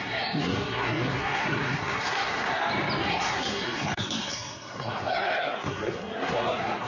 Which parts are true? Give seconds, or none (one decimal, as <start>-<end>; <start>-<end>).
2.6-3.1